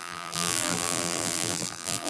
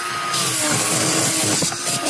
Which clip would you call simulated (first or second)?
first